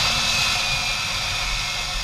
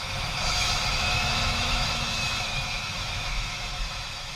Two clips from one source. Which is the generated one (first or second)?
second